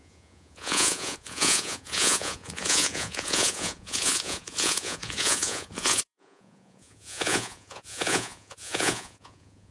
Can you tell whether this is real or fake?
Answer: fake